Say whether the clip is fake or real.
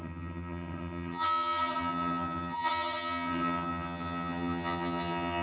fake